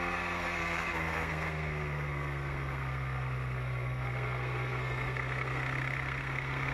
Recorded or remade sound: remade